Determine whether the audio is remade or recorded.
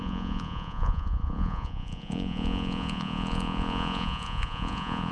remade